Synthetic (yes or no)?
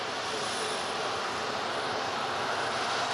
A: no